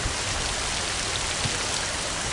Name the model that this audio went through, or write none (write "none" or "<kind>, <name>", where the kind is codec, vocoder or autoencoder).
none